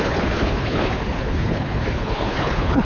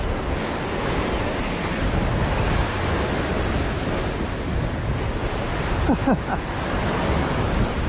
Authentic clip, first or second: second